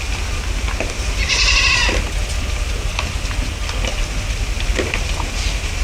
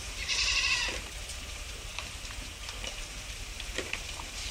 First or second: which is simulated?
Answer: second